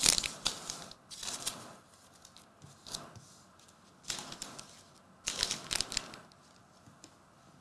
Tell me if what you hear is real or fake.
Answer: real